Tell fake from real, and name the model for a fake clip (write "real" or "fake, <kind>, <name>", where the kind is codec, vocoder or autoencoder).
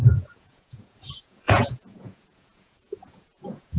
fake, vocoder, Vocos